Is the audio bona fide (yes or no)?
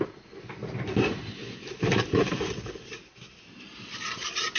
yes